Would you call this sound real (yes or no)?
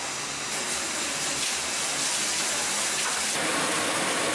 yes